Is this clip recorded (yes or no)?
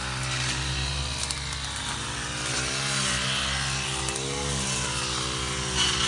yes